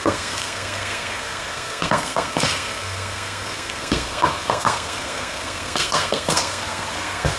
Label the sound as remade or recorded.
remade